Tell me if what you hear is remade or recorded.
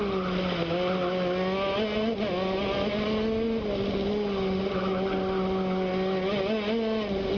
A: recorded